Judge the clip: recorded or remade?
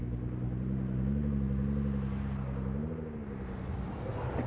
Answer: recorded